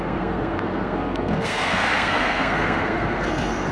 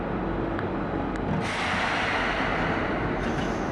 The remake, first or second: first